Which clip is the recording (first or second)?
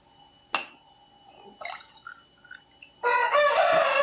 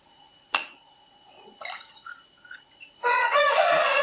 first